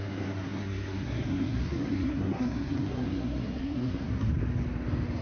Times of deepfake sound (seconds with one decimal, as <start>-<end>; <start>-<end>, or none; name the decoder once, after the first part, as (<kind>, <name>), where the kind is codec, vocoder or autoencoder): 0.0-4.3 (codec, SNAC)